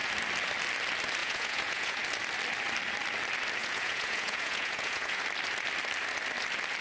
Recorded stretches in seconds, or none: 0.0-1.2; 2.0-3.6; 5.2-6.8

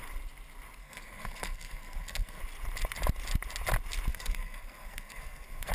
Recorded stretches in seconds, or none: 0.0-0.8; 2.4-4.1

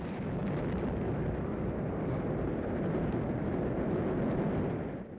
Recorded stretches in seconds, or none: none

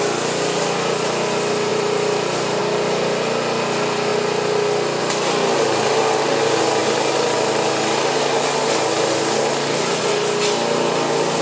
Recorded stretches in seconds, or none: 0.0-1.7; 2.6-11.4